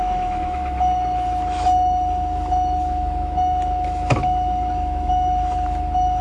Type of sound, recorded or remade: remade